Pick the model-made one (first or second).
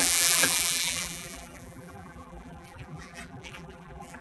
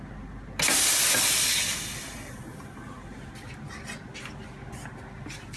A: first